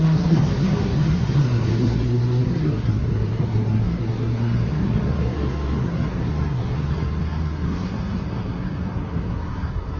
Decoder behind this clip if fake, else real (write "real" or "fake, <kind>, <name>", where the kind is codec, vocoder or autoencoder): fake, codec, SNAC